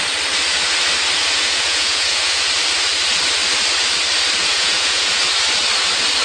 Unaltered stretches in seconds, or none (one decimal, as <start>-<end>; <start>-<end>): 0.0-1.2; 2.4-4.4; 5.2-6.2